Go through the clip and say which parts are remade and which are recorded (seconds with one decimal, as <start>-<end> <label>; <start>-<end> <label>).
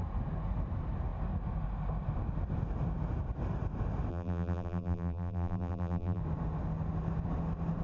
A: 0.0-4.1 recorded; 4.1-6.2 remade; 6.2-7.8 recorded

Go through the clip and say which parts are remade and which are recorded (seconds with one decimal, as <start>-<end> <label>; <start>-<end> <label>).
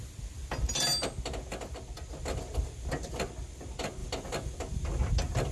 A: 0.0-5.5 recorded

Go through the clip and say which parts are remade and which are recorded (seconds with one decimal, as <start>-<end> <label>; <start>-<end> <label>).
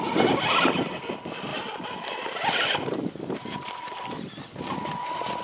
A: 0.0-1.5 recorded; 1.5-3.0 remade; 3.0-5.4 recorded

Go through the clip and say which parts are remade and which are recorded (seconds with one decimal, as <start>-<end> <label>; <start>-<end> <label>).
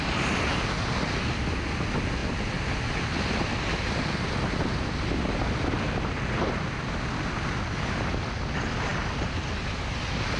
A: 0.0-10.4 recorded